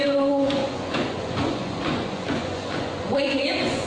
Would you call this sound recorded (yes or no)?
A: no